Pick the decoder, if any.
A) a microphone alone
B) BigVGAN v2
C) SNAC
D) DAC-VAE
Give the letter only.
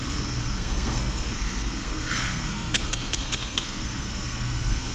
C